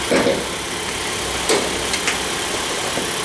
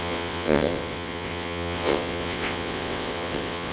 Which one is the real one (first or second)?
first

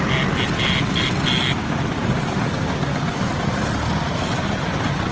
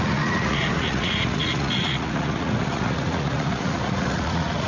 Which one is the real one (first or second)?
first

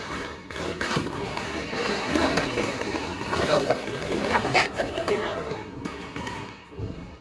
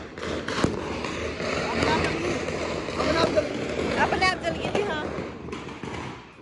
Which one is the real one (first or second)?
second